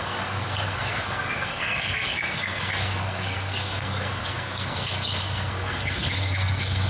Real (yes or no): no